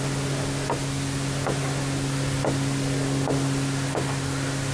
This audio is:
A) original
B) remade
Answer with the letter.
A